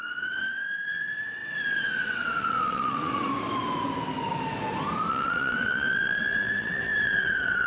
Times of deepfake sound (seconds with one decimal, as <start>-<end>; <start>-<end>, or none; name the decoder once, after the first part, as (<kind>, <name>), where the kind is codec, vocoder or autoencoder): 0.0-3.3 (vocoder, WaveNeXt); 5.1-7.7